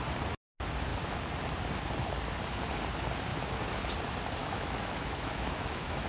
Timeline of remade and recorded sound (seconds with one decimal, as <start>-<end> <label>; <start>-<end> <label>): 0.0-3.3 recorded; 3.3-3.9 remade; 3.9-4.4 recorded; 4.4-6.1 remade